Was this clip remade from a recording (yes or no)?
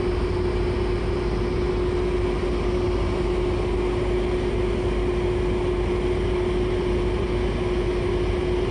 no